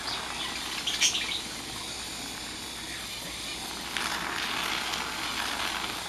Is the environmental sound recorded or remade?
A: recorded